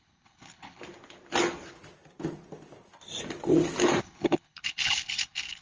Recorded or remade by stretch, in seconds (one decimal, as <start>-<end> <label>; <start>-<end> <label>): 0.0-0.8 remade; 0.8-4.0 recorded; 4.0-5.6 remade